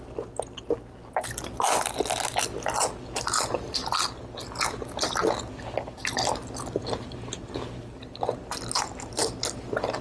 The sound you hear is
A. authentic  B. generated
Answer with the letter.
A